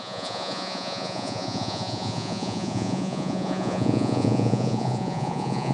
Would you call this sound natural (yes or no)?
no